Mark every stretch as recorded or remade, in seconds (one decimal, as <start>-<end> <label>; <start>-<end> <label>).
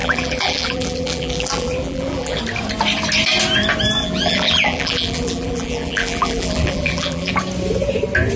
0.0-2.4 remade; 2.4-4.0 recorded; 4.0-7.3 remade; 7.3-8.4 recorded